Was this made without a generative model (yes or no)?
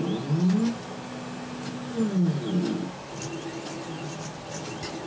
yes